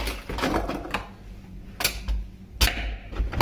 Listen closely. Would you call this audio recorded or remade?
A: recorded